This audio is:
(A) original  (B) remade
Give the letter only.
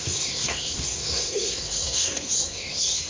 B